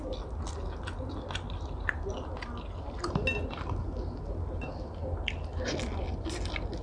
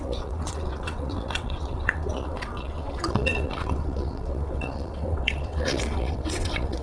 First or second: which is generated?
second